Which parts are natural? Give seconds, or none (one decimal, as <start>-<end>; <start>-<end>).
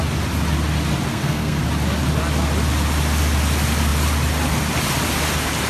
0.0-1.1; 1.6-5.7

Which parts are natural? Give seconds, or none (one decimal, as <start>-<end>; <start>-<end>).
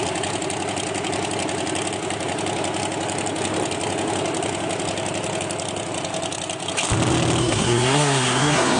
0.0-7.4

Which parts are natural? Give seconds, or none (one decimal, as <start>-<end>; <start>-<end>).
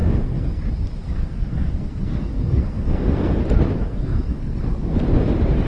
0.6-1.0; 3.4-3.8; 5.0-5.7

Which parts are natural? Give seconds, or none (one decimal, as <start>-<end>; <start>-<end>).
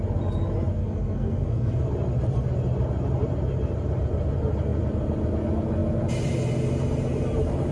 0.0-0.8; 1.8-7.7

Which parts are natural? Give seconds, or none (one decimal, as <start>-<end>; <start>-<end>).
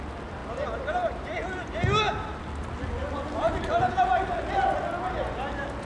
0.0-5.8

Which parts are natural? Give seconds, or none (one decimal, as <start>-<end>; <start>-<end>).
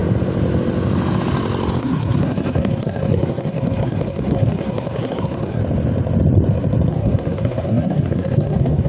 0.0-1.8; 5.6-6.9